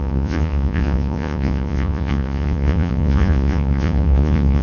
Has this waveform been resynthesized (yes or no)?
yes